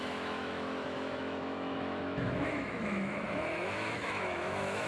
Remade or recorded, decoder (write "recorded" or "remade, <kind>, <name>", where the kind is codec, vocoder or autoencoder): remade, autoencoder, DAC-VAE